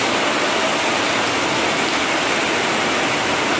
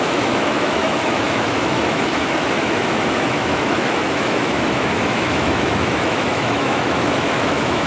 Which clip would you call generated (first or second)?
second